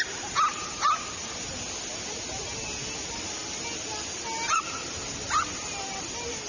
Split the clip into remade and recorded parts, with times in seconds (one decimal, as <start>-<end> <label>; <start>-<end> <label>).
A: 0.0-0.5 recorded; 0.5-1.5 remade; 1.5-6.5 recorded